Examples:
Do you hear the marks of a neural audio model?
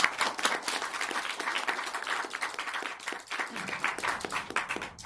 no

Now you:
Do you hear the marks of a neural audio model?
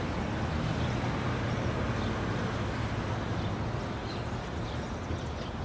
no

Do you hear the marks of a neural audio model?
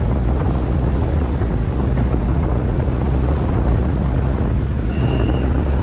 yes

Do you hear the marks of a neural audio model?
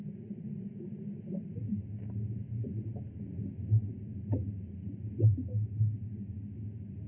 no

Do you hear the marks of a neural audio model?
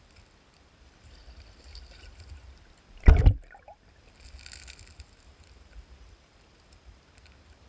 no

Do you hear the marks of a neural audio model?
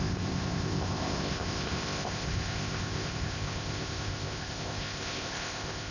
yes